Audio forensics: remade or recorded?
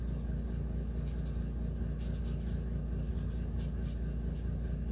recorded